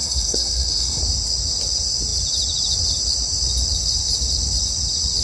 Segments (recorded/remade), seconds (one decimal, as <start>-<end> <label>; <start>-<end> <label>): 0.0-1.0 remade; 1.0-5.2 recorded